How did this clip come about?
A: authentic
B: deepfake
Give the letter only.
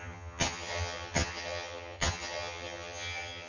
B